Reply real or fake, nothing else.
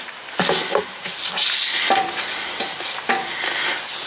real